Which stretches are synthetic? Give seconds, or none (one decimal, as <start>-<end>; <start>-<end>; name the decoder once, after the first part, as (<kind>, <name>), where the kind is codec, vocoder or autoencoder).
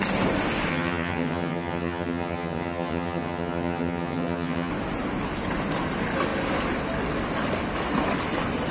0.7-4.7 (vocoder, HiFi-GAN)